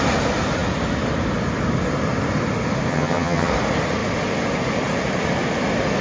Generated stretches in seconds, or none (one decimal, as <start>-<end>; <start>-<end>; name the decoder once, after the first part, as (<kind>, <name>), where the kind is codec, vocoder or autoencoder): 2.9-3.5 (vocoder, HiFi-GAN)